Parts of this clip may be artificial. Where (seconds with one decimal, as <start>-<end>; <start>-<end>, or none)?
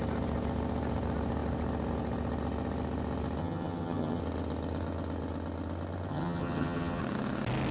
3.4-4.2; 6.1-7.0